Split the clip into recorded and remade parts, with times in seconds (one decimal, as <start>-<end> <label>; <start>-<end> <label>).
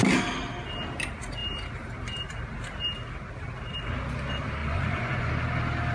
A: 0.0-4.6 recorded; 4.6-5.3 remade; 5.3-5.9 recorded